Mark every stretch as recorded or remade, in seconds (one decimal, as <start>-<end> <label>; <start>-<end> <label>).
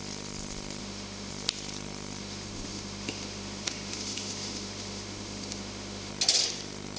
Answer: 0.0-0.8 recorded; 0.8-1.3 remade; 1.3-2.2 recorded; 2.2-6.1 remade; 6.1-7.0 recorded